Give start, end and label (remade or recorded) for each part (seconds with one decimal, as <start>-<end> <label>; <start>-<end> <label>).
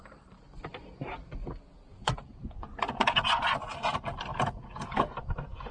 0.0-1.9 recorded; 1.9-3.3 remade; 3.3-4.3 recorded; 4.3-5.1 remade; 5.1-5.7 recorded